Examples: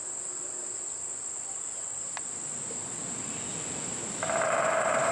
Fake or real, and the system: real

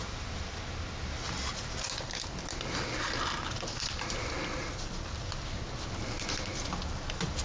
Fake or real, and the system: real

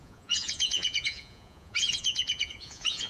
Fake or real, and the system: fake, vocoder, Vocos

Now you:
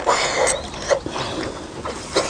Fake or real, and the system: real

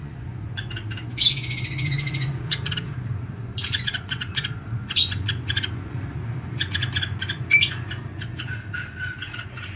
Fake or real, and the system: fake, vocoder, Vocos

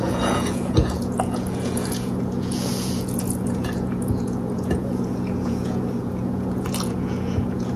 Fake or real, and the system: fake, vocoder, Vocos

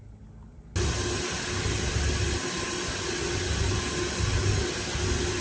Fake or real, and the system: real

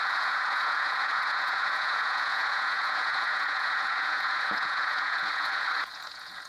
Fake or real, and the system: fake, vocoder, Vocos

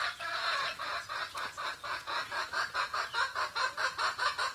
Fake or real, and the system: fake, vocoder, Vocos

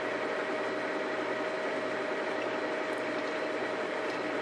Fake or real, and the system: real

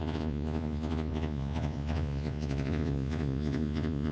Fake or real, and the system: fake, vocoder, Vocos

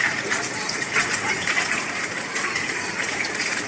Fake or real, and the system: fake, vocoder, Vocos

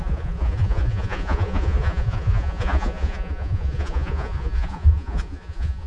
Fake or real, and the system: fake, vocoder, Vocos